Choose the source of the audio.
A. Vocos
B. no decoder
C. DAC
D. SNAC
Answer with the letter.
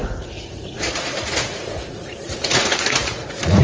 A